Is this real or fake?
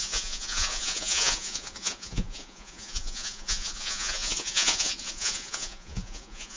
fake